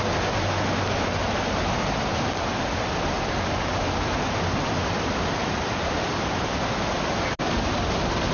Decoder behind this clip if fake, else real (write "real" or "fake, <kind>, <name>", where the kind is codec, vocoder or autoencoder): real